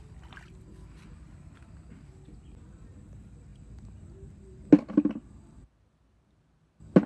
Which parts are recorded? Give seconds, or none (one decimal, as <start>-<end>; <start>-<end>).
0.0-7.1